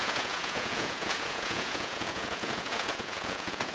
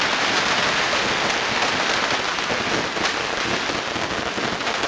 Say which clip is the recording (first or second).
second